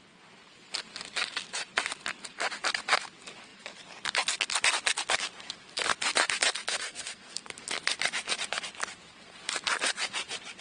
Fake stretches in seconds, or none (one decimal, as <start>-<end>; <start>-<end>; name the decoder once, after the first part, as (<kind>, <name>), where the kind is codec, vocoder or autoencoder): 6.7-7.5 (codec, SNAC)